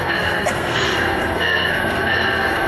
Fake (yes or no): yes